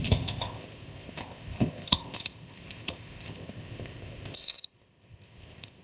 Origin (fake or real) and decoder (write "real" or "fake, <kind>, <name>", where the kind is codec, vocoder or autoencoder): fake, codec, ZipCodec